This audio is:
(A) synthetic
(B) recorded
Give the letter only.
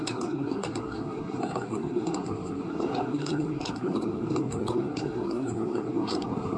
A